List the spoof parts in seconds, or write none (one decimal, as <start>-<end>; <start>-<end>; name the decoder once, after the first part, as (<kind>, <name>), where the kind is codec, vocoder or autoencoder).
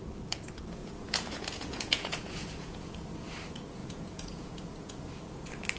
0.8-2.9 (vocoder, Vocos); 3.8-5.0